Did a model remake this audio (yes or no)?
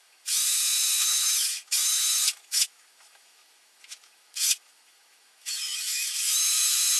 yes